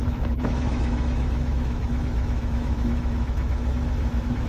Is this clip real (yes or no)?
no